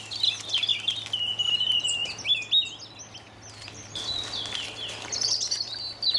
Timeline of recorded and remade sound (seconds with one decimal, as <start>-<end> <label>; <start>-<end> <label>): 0.0-6.2 recorded